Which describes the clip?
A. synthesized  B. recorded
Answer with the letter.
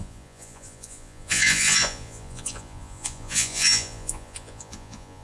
A